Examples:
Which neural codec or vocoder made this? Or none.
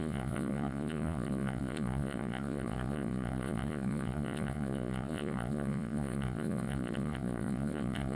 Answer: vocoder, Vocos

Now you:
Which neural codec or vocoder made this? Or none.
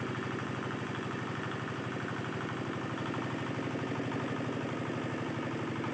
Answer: none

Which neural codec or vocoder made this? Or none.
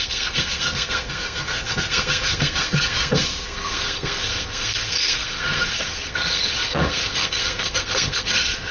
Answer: codec, SNAC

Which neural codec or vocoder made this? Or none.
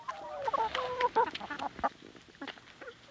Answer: none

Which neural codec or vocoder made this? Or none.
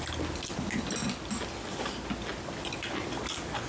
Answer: none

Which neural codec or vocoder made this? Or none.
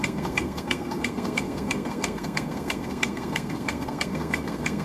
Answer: codec, SNAC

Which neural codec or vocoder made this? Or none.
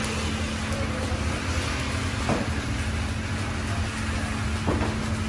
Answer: none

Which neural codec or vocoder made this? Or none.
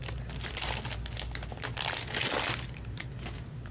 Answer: none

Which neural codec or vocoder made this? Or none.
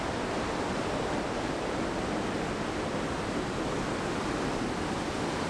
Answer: none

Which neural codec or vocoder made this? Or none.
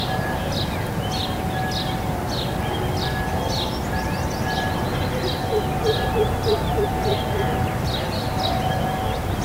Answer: none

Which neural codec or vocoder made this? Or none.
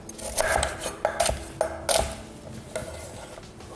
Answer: none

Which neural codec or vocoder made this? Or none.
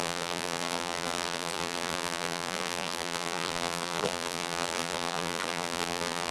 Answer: vocoder, BigVGAN v2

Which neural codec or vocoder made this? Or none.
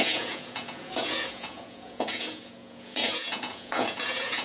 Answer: vocoder, Vocos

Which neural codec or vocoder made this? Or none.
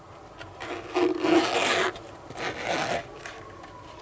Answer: none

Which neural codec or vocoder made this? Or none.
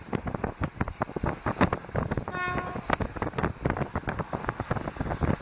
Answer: none